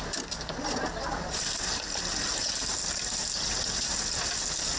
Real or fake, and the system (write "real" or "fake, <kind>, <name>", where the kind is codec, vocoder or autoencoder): real